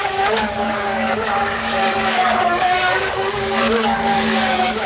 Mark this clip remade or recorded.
remade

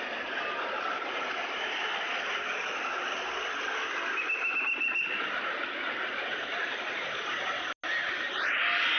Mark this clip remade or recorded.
recorded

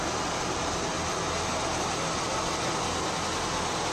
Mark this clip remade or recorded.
recorded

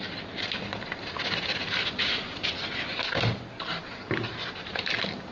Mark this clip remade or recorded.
recorded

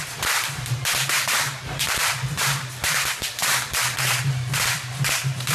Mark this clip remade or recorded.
remade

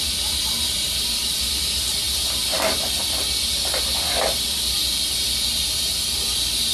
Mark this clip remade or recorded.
recorded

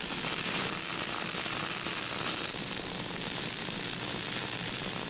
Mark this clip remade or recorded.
remade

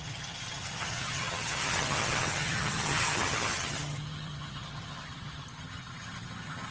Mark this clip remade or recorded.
remade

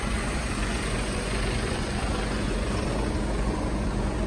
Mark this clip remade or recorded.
remade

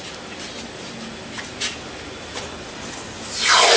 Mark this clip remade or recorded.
recorded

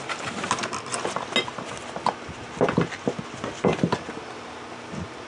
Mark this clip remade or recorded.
recorded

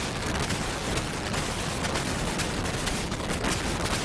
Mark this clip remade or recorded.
recorded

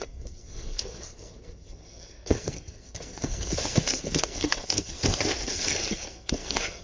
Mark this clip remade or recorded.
remade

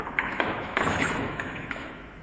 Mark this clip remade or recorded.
remade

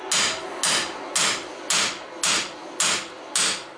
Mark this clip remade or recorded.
recorded